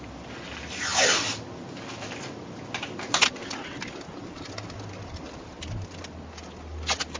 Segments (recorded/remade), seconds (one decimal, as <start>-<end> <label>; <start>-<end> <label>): 0.0-7.2 recorded